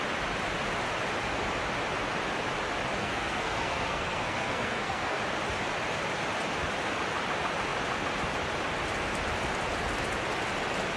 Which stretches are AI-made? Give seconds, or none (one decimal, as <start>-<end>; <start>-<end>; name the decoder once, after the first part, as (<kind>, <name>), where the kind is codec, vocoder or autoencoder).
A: 3.0-5.2 (codec, SNAC)